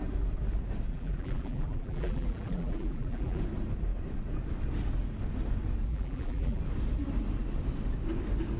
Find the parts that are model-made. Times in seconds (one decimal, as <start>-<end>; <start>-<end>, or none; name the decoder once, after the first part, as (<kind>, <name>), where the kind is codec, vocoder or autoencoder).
0.9-3.4 (vocoder, BigVGAN v2); 5.9-6.6